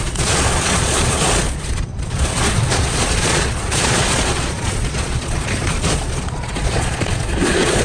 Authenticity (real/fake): fake